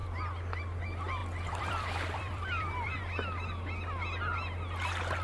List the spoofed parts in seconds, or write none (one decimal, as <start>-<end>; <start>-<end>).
1.2-3.0